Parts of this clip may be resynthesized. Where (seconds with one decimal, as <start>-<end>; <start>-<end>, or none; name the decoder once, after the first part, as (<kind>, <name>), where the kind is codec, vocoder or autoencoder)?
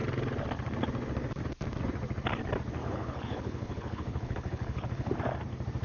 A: 2.8-5.1 (codec, HILCodec)